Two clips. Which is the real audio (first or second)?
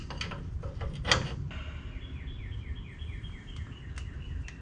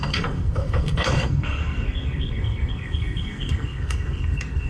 first